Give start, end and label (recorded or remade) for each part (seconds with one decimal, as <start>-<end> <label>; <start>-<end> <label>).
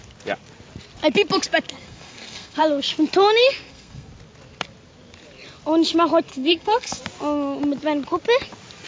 0.0-1.8 recorded; 1.8-2.6 remade; 2.6-3.4 recorded; 3.4-4.1 remade; 4.1-6.3 recorded; 6.3-7.0 remade; 7.0-8.9 recorded